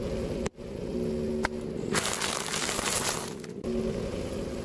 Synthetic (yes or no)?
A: no